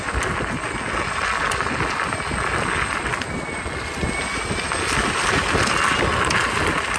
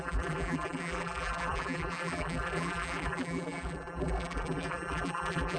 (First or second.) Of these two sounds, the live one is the first